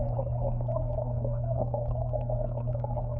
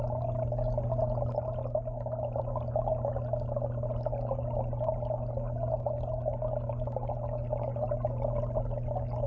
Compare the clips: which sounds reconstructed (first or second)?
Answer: first